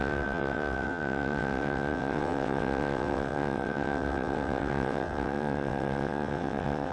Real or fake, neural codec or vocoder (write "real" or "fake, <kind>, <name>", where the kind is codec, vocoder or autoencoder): fake, vocoder, WaveNeXt